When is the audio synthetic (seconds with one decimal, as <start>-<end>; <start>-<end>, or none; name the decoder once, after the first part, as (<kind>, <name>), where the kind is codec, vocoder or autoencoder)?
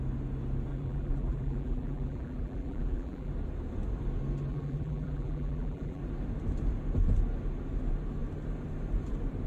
0.7-3.3 (vocoder, BigVGAN v2); 4.5-6.0